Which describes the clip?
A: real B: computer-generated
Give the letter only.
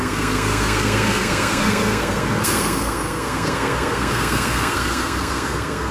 B